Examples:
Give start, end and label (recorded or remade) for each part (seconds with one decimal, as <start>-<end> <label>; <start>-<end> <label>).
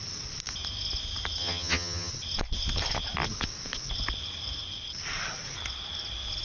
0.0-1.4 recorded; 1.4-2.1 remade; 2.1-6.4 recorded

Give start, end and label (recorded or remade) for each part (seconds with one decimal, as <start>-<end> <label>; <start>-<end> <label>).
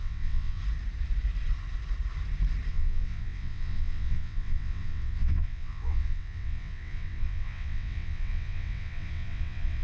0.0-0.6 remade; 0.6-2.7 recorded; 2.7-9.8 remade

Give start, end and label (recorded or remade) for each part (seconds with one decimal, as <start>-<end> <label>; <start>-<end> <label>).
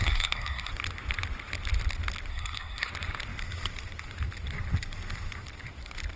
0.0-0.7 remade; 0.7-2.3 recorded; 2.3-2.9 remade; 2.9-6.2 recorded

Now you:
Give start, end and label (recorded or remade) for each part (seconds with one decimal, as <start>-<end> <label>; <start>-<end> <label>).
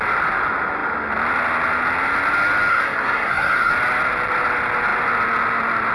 0.0-2.7 recorded; 2.7-3.7 remade; 3.7-5.9 recorded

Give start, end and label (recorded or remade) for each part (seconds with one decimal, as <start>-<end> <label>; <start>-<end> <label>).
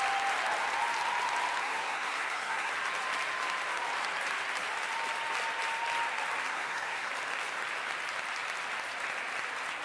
0.0-1.6 recorded; 1.6-2.7 remade; 2.7-6.5 recorded; 6.5-7.1 remade; 7.1-9.8 recorded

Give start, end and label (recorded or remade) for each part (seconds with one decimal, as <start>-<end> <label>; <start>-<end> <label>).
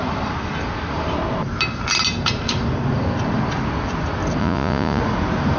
0.0-4.4 recorded; 4.4-5.0 remade; 5.0-5.6 recorded